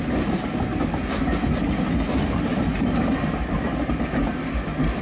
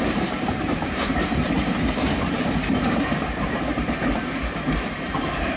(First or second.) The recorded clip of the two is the first